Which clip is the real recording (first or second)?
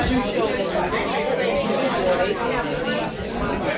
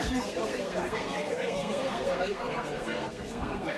first